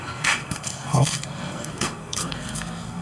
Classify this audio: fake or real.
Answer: fake